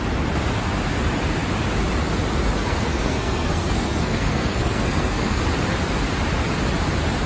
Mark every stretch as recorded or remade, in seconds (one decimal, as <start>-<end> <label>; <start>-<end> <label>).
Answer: 0.0-2.6 recorded; 2.6-5.4 remade; 5.4-7.3 recorded